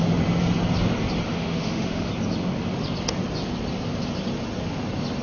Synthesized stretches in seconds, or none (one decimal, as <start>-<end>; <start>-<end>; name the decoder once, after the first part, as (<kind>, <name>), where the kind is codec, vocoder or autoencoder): 1.3-2.1 (autoencoder, DAC-VAE)